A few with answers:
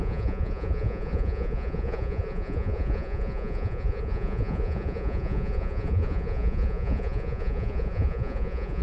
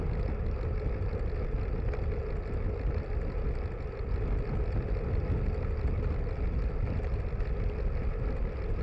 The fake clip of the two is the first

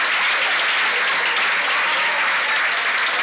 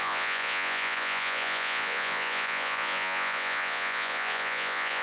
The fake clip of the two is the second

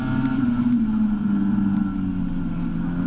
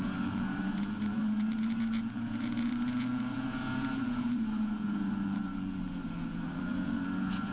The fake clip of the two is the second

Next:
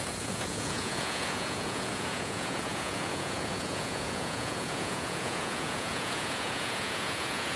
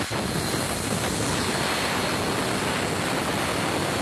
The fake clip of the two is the first